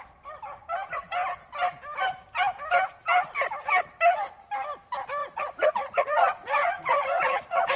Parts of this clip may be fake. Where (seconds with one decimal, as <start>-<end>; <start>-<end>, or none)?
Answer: 5.2-7.8